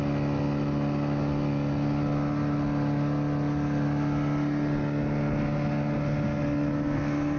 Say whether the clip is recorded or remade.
recorded